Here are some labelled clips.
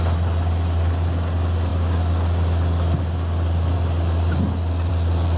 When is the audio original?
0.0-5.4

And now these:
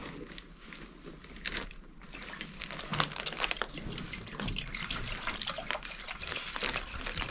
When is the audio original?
0.0-7.3

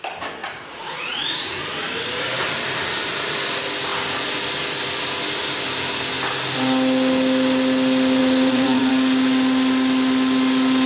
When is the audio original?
0.0-0.4; 1.6-8.2; 8.9-10.9

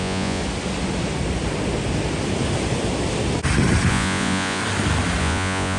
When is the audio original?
0.4-3.9; 4.6-5.2

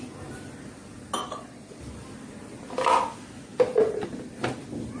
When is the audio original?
0.0-1.2; 1.8-5.0

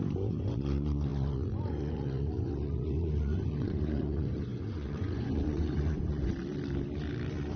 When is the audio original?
6.3-7.6